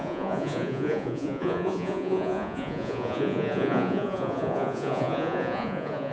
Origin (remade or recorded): remade